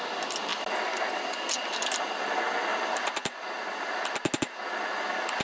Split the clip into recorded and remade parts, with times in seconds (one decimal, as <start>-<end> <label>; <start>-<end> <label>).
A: 0.0-2.7 recorded; 2.7-4.1 remade; 4.1-5.4 recorded